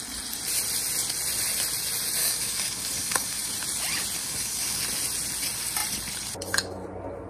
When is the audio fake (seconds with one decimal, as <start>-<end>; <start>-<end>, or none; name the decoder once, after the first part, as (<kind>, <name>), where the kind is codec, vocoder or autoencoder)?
2.2-3.5 (codec, DAC); 4.2-4.8